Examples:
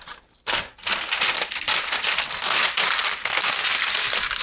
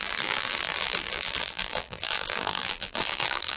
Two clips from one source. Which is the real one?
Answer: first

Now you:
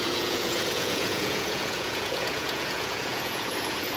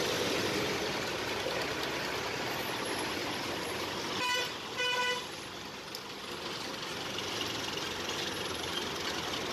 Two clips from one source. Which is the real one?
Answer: second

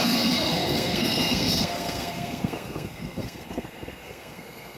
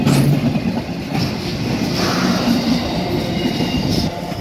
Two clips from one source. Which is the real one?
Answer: second